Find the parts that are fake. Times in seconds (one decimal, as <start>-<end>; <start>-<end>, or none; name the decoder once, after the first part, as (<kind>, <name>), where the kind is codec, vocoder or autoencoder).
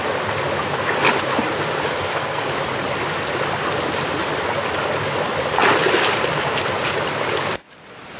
2.0-2.5 (codec, SNAC)